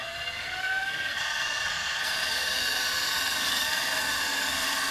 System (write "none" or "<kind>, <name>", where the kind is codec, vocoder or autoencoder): codec, SNAC